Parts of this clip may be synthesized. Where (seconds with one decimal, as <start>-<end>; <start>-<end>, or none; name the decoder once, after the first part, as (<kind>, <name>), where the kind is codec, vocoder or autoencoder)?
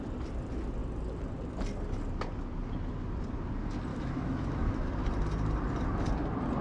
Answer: 3.9-4.7 (autoencoder, DAC-VAE)